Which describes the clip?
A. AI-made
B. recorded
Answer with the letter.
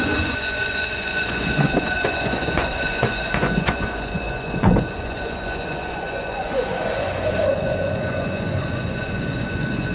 A